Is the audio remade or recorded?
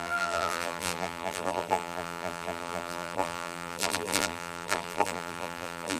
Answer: remade